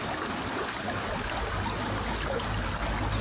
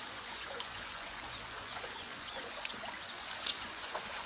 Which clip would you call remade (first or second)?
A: second